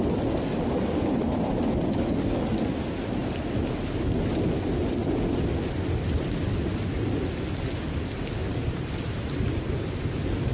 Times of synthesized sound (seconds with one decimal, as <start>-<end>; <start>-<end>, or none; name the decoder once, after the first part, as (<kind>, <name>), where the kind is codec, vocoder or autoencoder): 8.4-10.1 (vocoder, BigVGAN v2)